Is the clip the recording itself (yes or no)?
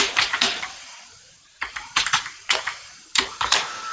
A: no